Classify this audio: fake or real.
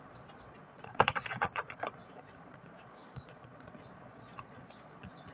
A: fake